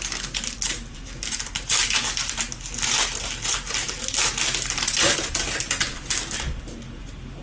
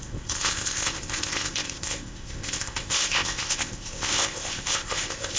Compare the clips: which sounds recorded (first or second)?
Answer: first